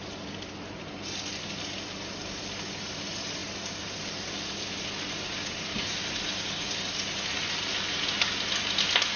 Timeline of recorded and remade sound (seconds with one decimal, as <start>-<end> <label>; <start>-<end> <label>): 0.0-9.2 recorded

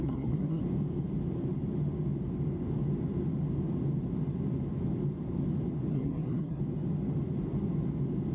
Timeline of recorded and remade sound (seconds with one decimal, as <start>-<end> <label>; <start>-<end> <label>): 0.0-0.6 remade; 0.6-5.9 recorded; 5.9-6.6 remade; 6.6-8.3 recorded